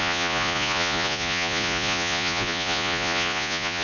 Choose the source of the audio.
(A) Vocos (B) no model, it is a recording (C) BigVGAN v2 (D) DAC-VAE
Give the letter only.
A